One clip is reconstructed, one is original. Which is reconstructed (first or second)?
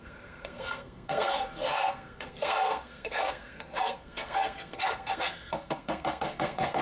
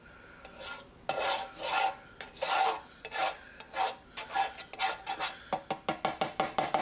first